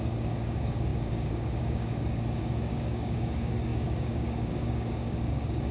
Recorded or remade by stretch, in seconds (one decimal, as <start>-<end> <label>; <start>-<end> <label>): 0.0-5.7 remade